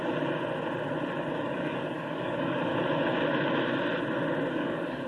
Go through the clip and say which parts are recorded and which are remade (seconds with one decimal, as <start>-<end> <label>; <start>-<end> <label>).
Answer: 0.0-1.4 recorded; 1.4-2.7 remade; 2.7-4.5 recorded; 4.5-5.1 remade